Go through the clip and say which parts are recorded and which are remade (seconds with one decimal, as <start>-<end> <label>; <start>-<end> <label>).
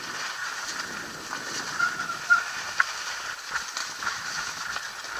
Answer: 0.0-3.8 recorded; 3.8-4.6 remade; 4.6-5.2 recorded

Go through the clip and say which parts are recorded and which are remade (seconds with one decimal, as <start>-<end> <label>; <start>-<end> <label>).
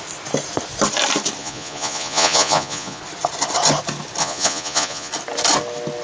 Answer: 0.0-1.4 recorded; 1.4-3.0 remade; 3.0-4.2 recorded; 4.2-5.1 remade; 5.1-6.0 recorded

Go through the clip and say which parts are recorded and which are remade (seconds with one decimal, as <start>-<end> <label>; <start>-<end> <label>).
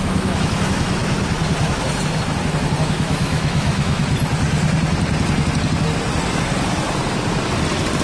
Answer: 0.0-1.0 remade; 1.0-2.8 recorded; 2.8-4.0 remade; 4.0-8.0 recorded